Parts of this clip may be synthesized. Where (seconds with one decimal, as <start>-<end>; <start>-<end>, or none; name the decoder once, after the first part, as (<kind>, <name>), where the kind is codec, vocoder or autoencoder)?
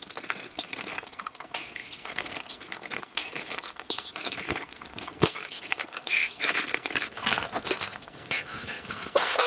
0.0-9.5 (codec, SNAC)